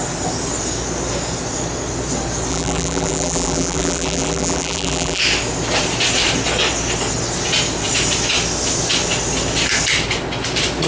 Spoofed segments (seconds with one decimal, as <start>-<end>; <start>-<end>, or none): 2.5-5.2